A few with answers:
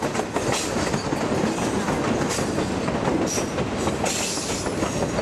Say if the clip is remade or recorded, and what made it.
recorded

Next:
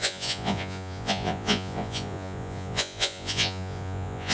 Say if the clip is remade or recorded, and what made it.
remade, vocoder, Vocos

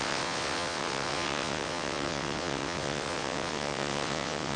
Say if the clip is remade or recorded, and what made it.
remade, vocoder, WaveNeXt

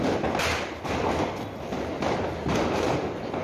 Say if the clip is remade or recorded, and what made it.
recorded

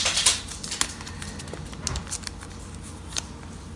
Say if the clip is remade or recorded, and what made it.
recorded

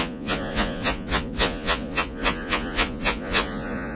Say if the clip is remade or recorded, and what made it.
remade, vocoder, Vocos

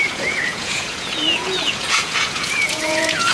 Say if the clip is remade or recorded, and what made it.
remade, vocoder, Vocos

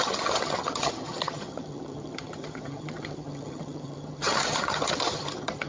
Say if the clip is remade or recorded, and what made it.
remade, vocoder, HiFi-GAN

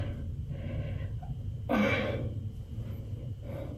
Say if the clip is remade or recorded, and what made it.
remade, vocoder, BigVGAN v2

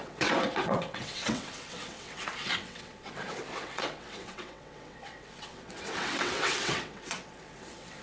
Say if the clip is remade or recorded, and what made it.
remade, vocoder, WaveNeXt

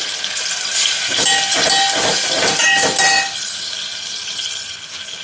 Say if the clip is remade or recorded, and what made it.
recorded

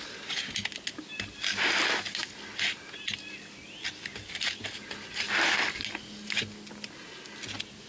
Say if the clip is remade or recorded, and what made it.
recorded